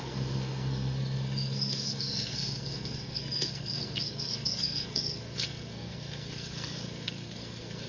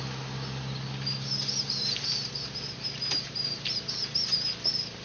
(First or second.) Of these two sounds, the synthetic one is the first